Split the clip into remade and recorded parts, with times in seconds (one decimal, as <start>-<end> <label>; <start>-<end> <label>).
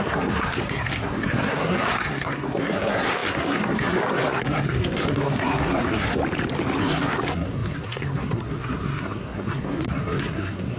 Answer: 0.0-6.2 remade; 6.2-6.8 recorded; 6.8-10.8 remade